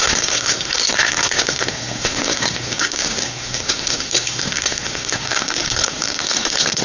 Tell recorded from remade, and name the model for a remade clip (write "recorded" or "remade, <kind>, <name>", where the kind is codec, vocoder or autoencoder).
remade, codec, SNAC